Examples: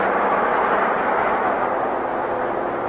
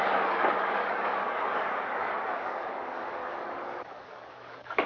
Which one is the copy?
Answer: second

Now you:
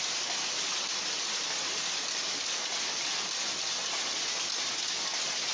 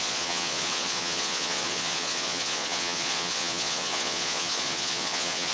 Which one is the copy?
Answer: second